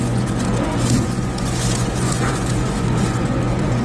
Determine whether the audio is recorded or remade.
remade